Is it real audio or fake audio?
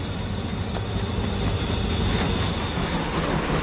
real